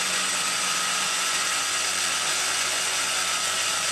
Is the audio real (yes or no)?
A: no